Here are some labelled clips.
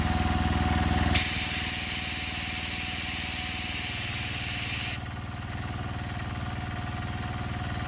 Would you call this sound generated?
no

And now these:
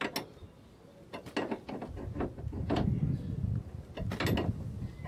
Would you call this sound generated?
no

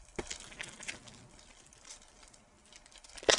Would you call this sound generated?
no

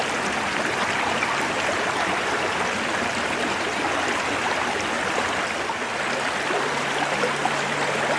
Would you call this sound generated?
no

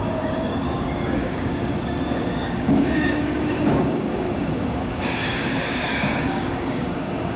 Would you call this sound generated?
yes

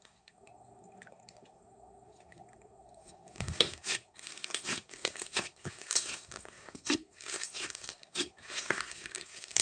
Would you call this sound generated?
yes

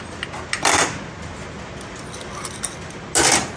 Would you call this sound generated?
no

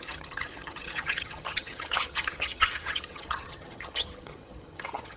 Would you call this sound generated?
yes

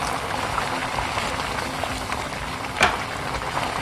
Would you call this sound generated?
no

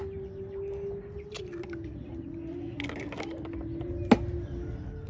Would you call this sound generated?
no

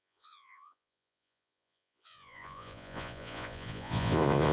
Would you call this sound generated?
yes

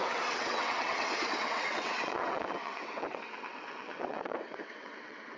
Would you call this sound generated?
yes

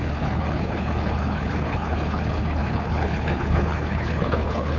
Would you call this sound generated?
yes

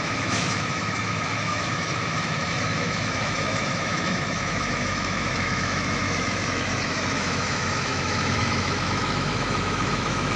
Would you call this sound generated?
yes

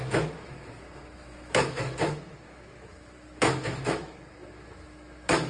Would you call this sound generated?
yes